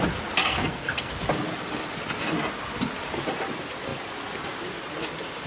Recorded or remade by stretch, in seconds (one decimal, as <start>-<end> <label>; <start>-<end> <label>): 0.0-0.4 recorded; 0.4-1.1 remade; 1.1-5.5 recorded